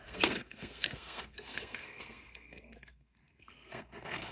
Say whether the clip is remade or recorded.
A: remade